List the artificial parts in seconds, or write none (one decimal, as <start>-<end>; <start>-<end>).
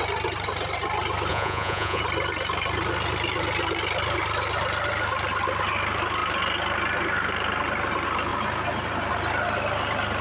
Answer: 1.3-2.0